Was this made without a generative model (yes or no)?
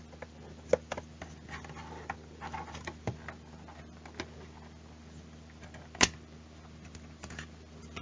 yes